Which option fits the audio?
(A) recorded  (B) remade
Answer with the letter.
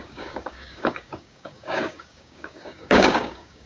B